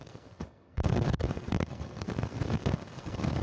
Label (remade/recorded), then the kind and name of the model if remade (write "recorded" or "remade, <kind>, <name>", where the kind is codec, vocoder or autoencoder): remade, codec, SNAC